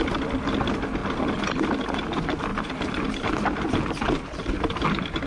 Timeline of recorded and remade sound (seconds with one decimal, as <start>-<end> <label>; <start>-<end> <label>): 0.0-2.5 recorded; 2.5-3.3 remade; 3.3-4.4 recorded; 4.4-5.3 remade